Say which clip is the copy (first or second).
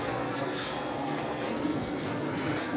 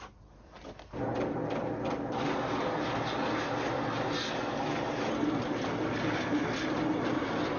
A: first